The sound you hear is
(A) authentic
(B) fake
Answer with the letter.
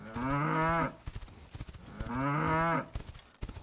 A